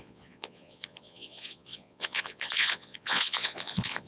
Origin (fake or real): fake